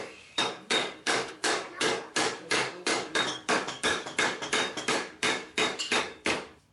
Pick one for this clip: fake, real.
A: fake